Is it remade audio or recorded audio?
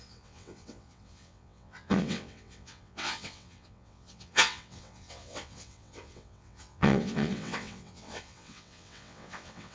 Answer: remade